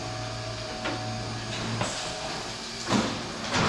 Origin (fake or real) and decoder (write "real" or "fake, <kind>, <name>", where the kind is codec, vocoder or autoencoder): real